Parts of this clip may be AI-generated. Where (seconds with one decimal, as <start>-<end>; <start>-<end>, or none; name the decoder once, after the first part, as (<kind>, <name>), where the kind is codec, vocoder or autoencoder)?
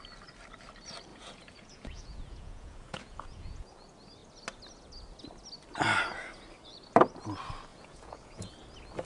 1.1-3.7 (vocoder, Vocos); 7.7-8.5